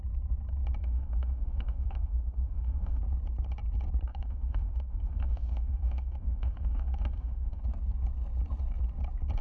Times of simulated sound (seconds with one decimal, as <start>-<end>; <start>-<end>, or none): 0.8-3.0; 4.1-7.6

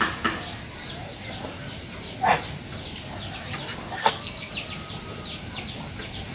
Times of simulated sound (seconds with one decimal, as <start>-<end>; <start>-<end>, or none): 4.0-4.5

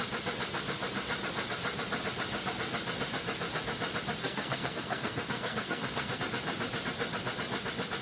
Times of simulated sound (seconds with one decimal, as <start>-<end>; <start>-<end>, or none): 4.2-6.2

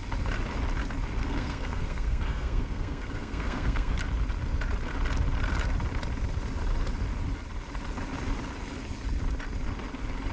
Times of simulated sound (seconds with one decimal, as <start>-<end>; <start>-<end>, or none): 1.2-3.9

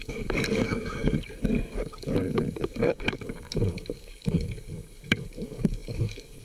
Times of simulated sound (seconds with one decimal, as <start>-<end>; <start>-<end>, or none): 0.0-6.4

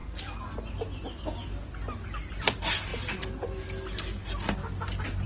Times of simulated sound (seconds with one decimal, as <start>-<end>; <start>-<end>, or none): none